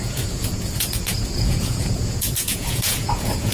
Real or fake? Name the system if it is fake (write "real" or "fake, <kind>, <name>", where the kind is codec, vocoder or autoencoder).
fake, vocoder, Vocos